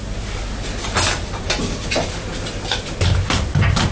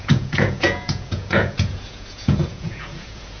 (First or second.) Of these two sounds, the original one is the first